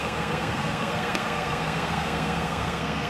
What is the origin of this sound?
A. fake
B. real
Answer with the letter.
A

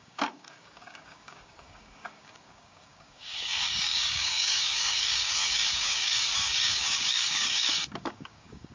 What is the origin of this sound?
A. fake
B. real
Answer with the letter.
A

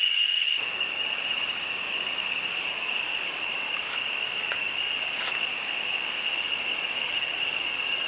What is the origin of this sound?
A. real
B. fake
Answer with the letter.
B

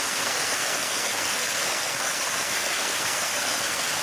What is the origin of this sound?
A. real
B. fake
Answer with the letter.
B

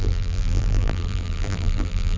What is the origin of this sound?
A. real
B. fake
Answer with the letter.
B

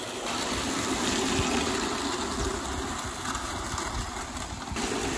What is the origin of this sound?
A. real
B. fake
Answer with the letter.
A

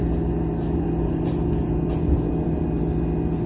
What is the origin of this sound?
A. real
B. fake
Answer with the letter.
A